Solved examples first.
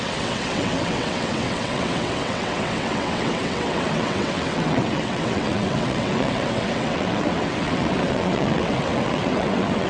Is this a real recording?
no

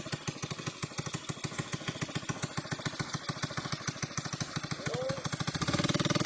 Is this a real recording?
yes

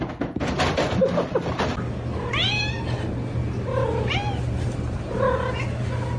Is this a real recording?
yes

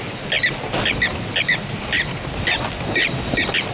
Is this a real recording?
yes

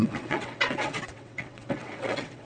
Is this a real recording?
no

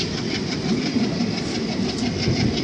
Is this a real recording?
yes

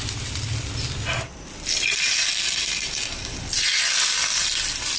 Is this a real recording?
yes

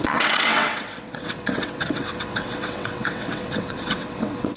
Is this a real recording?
no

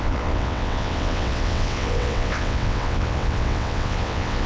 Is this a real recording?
no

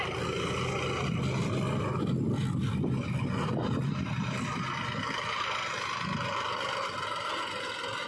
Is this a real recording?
yes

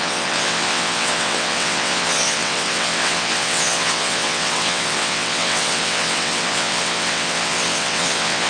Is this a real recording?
no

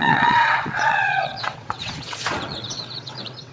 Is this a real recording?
no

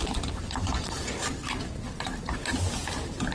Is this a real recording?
yes